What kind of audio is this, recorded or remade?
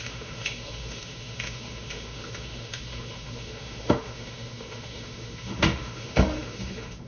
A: remade